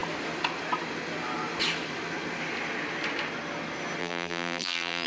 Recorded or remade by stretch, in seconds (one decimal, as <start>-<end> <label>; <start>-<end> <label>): 0.0-4.0 recorded; 4.0-5.1 remade